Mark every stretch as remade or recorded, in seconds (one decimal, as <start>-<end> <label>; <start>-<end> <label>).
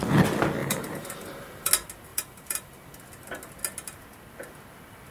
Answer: 0.0-0.6 recorded; 0.6-1.7 remade; 1.7-2.1 recorded; 2.1-2.7 remade; 2.7-5.1 recorded